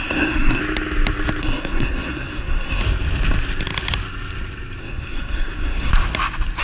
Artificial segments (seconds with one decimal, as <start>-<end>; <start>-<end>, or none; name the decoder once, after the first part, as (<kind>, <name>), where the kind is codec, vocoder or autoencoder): 0.0-0.6 (codec, SNAC); 1.4-2.8; 4.8-5.9